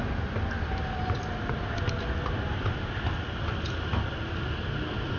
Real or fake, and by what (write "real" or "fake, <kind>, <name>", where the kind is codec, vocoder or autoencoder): real